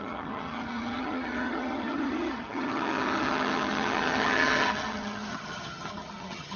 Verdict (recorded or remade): remade